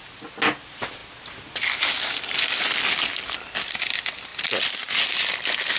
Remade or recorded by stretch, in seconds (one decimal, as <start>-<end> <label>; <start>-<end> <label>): 0.0-5.8 recorded